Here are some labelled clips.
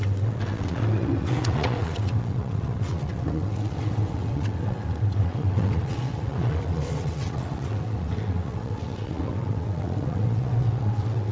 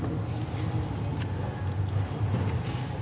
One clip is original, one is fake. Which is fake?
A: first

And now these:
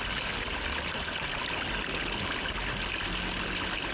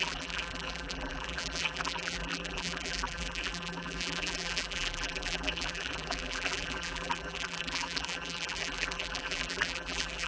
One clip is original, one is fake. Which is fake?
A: second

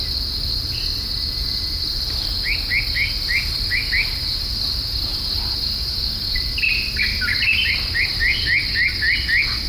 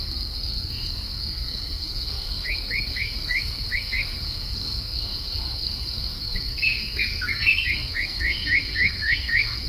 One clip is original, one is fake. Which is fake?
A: second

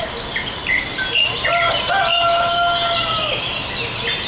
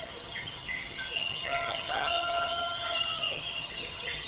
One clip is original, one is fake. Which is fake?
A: second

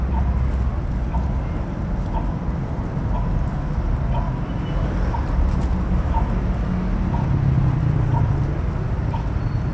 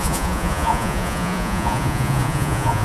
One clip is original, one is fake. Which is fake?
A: second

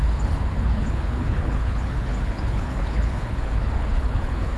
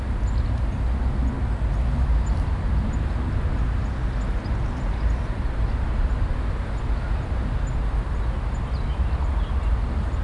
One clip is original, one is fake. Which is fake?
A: first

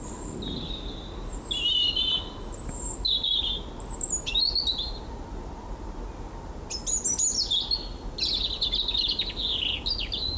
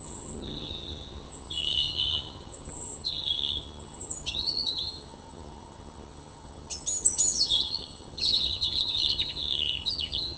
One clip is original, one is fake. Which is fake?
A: second